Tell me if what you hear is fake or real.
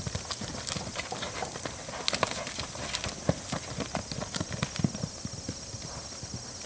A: real